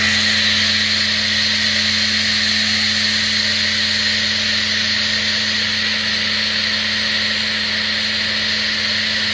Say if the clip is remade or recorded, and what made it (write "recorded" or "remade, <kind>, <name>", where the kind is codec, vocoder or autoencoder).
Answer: recorded